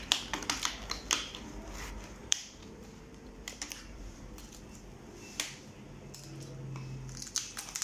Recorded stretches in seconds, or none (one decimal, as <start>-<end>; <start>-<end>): 0.0-2.2; 4.4-7.8